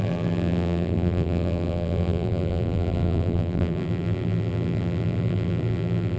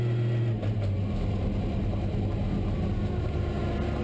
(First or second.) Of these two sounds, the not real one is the first